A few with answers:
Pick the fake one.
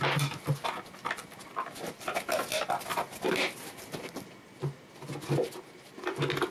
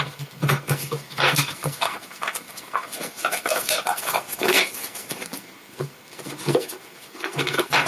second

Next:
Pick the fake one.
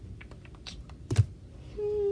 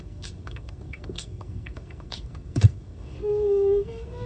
second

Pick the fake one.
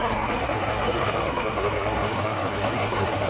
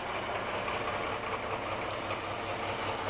first